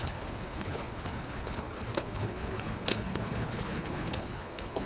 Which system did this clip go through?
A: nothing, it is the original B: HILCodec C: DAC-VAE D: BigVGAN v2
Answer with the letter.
B